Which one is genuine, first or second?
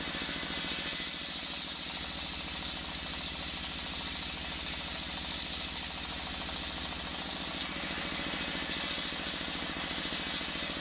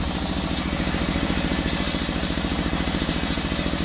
first